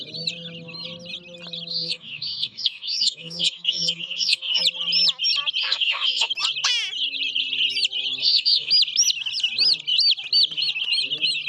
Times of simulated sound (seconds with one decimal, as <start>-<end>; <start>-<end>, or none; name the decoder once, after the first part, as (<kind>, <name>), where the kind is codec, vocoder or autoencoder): 1.7-4.6 (codec, DAC); 5.6-6.3; 8.2-8.7